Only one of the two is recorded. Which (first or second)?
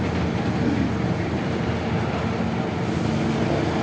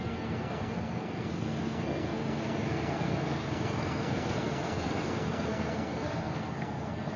first